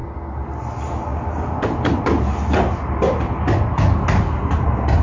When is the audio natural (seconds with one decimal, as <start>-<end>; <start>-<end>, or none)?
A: 0.0-5.0

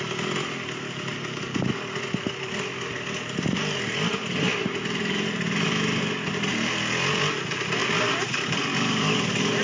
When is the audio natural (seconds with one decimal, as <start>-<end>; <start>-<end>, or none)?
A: 0.0-9.6